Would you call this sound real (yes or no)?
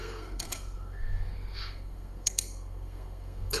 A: no